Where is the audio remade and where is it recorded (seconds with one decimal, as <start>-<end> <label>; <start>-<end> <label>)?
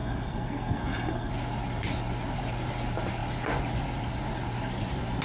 0.0-1.3 remade; 1.3-5.2 recorded